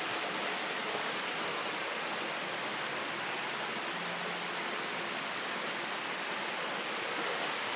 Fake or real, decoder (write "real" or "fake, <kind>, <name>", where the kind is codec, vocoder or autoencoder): real